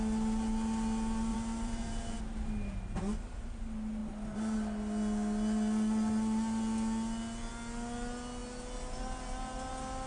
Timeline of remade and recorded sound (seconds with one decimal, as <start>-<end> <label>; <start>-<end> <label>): 0.0-1.3 recorded; 1.3-2.2 remade; 2.2-10.1 recorded